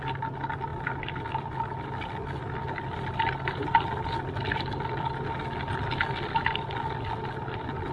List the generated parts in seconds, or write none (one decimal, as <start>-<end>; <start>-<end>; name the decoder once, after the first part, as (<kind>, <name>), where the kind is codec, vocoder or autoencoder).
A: none